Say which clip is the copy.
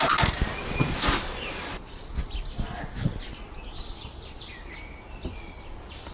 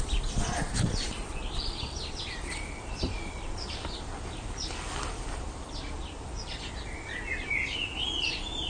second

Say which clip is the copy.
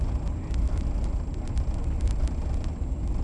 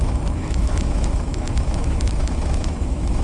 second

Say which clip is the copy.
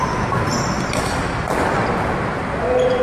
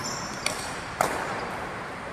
second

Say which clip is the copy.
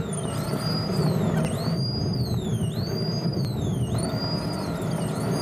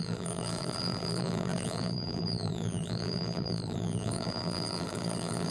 second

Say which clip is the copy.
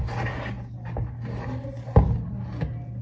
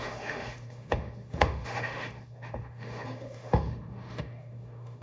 second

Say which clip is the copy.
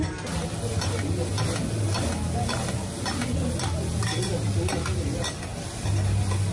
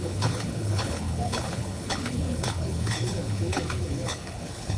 second